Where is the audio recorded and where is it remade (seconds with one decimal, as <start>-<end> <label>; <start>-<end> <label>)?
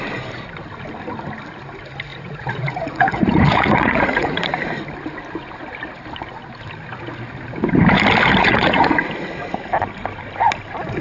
0.0-2.1 recorded; 2.1-4.5 remade; 4.5-8.4 recorded; 8.4-8.9 remade; 8.9-11.0 recorded